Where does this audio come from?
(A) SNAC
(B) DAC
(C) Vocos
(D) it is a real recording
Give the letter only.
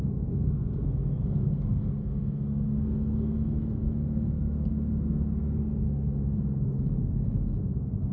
A